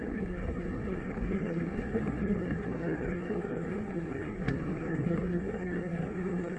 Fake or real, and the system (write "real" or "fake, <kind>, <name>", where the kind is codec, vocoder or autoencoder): fake, codec, SNAC